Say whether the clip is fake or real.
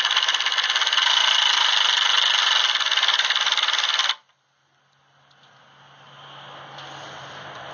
real